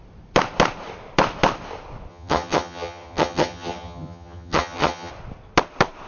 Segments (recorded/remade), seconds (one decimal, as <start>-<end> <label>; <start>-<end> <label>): 0.0-2.1 recorded; 2.1-5.1 remade; 5.1-6.1 recorded